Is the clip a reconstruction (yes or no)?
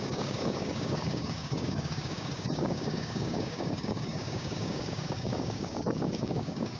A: yes